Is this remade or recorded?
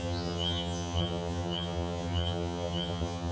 remade